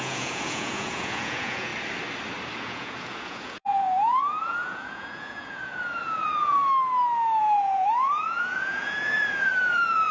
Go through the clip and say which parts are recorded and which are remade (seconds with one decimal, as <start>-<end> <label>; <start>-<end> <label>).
0.0-1.7 remade; 1.7-2.6 recorded; 2.6-6.6 remade; 6.6-7.4 recorded; 7.4-10.1 remade